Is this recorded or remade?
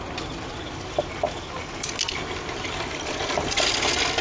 recorded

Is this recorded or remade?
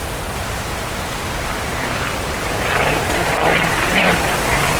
remade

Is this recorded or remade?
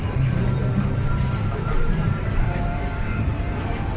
remade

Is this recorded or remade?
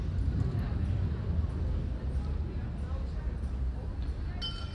recorded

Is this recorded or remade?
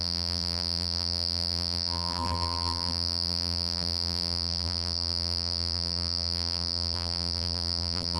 remade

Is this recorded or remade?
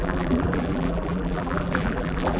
remade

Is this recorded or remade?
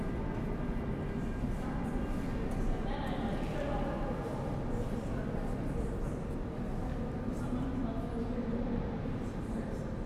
recorded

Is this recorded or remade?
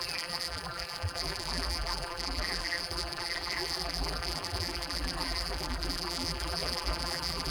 remade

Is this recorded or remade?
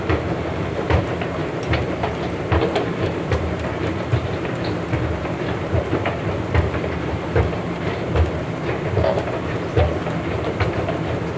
remade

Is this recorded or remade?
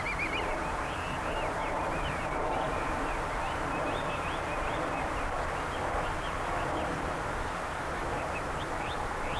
remade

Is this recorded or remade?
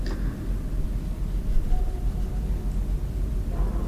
recorded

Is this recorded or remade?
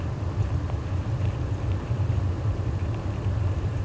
remade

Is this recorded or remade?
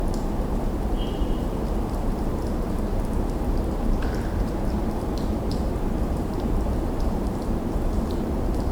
remade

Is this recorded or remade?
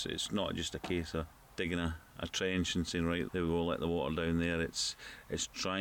recorded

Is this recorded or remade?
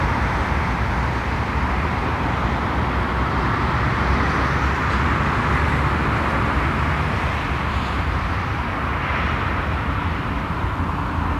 recorded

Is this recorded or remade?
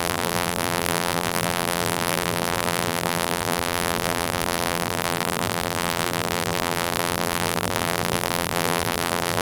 remade